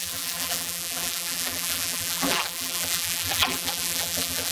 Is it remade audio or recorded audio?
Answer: remade